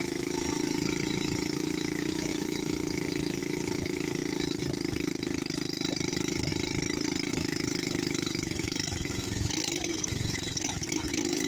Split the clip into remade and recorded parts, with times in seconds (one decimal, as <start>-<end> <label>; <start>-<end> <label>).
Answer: 0.0-4.2 remade; 4.2-6.1 recorded; 6.1-6.5 remade; 6.5-7.3 recorded; 7.3-11.5 remade